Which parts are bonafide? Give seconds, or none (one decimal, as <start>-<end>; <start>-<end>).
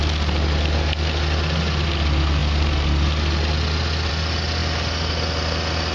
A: 0.0-5.9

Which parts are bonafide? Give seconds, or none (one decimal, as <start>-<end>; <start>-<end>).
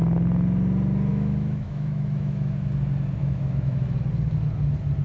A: 0.0-1.1; 2.7-3.2; 4.1-5.0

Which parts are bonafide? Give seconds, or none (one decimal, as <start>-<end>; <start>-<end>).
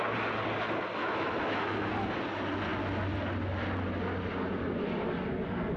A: 0.0-1.0; 1.9-5.8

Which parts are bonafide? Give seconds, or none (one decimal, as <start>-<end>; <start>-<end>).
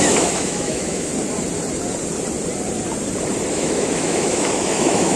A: 1.1-3.5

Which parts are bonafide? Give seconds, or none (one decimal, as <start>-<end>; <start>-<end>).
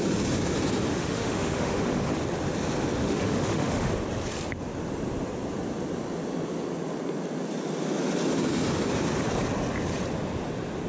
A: 0.0-0.9; 2.1-3.0; 3.9-10.9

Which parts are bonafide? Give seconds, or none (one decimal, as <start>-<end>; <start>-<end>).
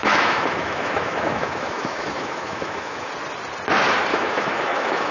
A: 3.1-4.1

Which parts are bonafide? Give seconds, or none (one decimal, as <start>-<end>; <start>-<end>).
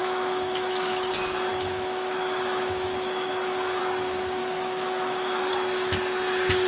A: 1.1-1.5; 3.8-4.4; 5.5-6.7